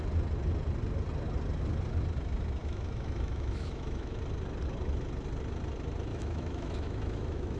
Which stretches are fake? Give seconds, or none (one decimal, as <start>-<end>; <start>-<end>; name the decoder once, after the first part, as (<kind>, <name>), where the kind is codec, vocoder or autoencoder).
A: 2.6-4.2 (autoencoder, DAC-VAE); 6.1-7.6